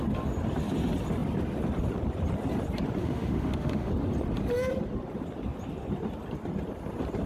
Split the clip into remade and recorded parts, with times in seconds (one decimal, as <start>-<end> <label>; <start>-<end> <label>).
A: 0.0-3.0 recorded; 3.0-3.9 remade; 3.9-7.3 recorded